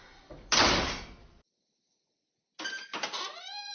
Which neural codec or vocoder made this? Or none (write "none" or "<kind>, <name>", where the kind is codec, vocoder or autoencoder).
none